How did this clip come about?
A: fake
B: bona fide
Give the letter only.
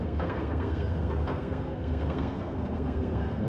A